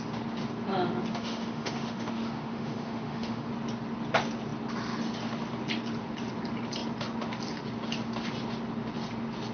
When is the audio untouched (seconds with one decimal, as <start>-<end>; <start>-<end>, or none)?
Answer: 0.0-1.1; 3.5-9.5